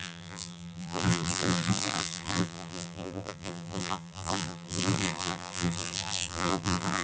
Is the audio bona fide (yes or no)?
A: no